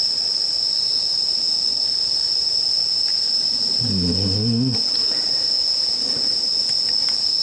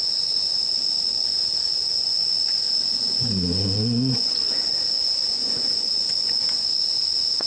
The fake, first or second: second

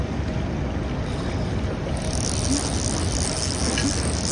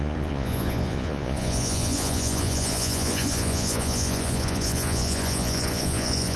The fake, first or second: second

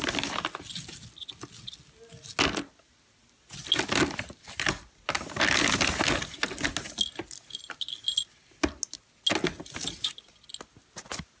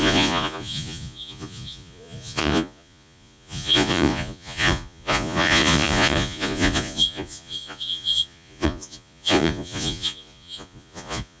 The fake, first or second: second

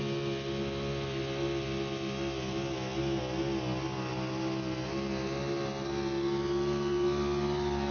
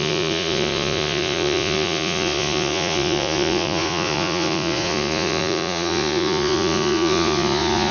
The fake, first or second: second